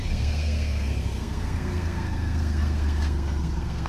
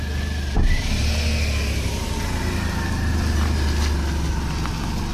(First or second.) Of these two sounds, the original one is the second